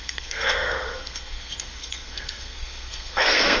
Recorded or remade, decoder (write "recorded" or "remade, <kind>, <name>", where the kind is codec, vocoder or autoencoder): remade, codec, SNAC